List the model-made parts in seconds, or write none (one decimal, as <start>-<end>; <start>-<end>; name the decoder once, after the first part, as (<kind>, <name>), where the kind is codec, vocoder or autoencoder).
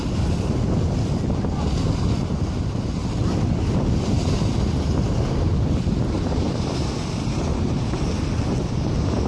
none